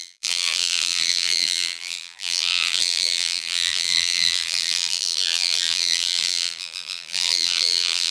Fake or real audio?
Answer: fake